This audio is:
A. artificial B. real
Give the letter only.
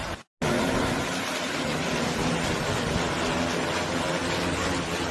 B